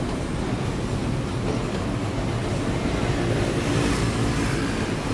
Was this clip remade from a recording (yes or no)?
no